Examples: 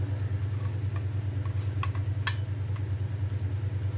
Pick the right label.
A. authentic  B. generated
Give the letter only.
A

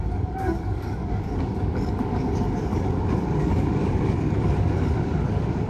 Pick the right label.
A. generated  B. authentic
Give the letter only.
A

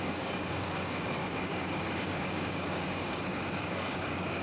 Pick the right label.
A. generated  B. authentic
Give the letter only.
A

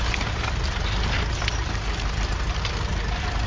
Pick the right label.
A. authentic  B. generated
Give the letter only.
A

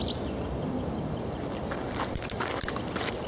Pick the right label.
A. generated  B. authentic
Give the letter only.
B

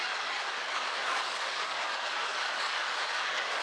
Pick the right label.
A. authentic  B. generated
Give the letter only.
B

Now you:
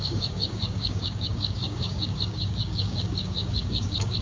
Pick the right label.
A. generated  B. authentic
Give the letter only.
A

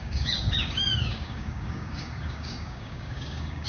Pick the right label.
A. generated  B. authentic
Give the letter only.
A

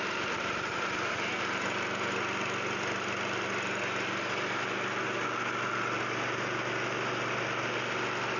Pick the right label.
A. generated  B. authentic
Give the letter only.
B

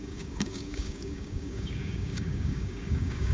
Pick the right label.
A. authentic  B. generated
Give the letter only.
B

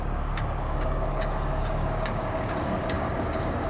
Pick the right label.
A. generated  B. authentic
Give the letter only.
A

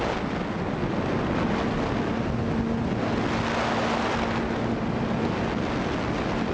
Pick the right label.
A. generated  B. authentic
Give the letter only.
B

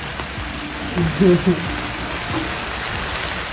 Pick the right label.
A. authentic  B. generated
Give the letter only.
A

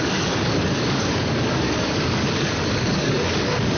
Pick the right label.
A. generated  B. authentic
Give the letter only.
A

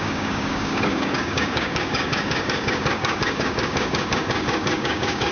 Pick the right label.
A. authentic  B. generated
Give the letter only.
B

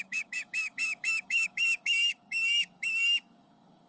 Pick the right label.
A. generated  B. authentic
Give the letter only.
A